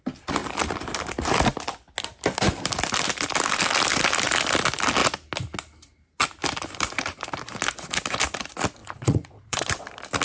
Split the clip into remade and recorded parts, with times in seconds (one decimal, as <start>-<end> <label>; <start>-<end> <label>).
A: 0.0-8.8 recorded; 8.8-9.7 remade; 9.7-10.2 recorded